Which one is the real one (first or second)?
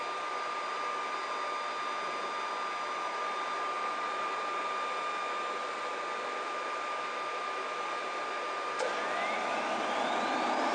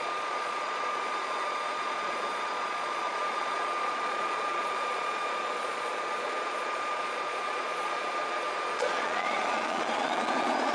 first